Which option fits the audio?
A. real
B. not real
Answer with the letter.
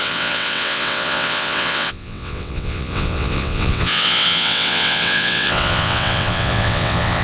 B